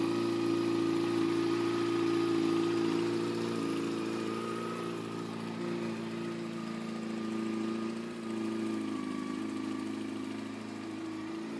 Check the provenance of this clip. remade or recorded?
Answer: recorded